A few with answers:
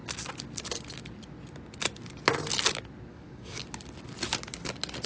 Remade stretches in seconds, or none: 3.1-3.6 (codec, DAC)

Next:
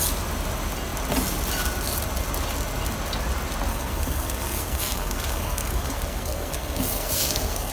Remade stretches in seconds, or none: 3.7-7.7 (codec, SNAC)

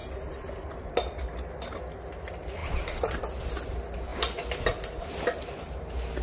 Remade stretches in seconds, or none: none

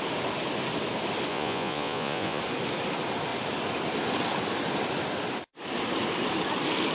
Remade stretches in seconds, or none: 1.3-2.4 (vocoder, Vocos)

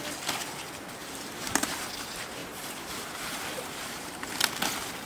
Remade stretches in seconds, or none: 1.0-1.8 (vocoder, BigVGAN v2); 2.4-4.3

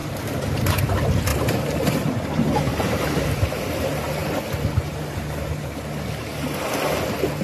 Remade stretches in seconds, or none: 0.0-0.6 (vocoder, BigVGAN v2); 1.3-3.7

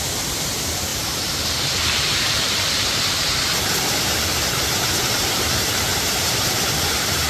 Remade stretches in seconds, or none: 0.0-7.3 (vocoder, BigVGAN v2)

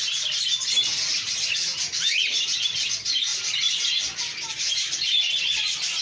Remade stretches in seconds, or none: none